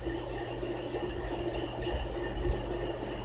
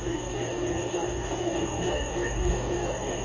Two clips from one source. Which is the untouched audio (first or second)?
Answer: first